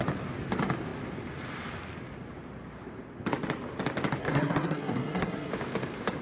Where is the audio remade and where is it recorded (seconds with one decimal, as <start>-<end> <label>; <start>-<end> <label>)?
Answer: 0.0-4.2 recorded; 4.2-5.5 remade; 5.5-6.2 recorded